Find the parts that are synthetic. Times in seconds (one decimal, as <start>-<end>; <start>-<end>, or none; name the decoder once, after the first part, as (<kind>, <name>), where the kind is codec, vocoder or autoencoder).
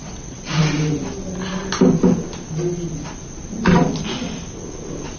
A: 0.0-0.6 (vocoder, WaveNeXt)